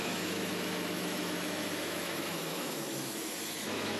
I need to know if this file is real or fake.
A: fake